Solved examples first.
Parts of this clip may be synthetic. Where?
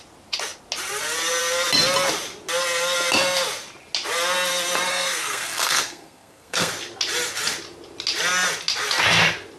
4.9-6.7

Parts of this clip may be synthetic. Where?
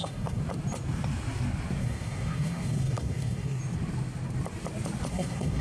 0.0-0.4; 1.8-3.6; 5.1-5.6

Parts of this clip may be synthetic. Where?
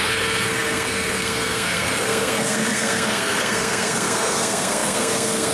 0.0-5.5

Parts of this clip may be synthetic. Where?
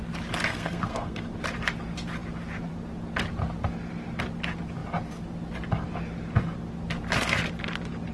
0.5-1.3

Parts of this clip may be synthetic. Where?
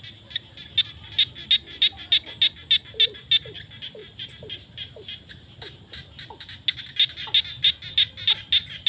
none